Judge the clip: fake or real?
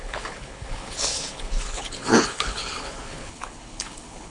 fake